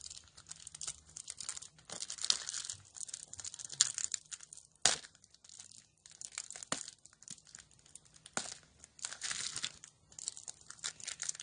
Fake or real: real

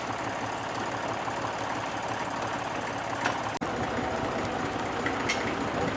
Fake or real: real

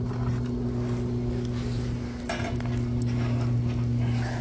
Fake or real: real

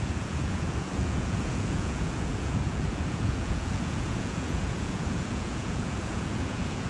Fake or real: fake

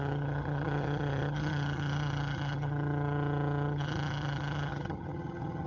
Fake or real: fake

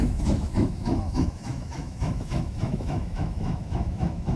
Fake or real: fake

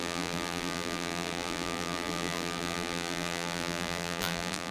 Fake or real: fake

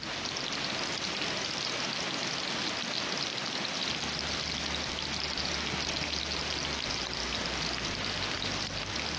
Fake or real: real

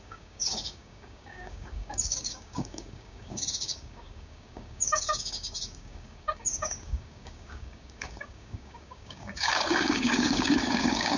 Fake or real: fake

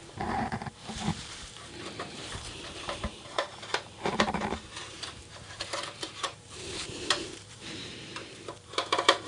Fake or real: fake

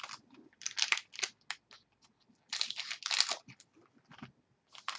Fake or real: real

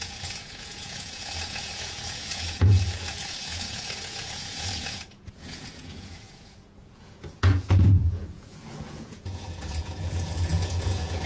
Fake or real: fake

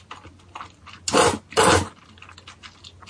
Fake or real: real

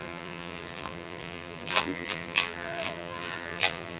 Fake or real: fake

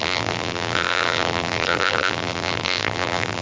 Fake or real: fake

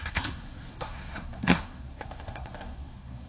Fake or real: fake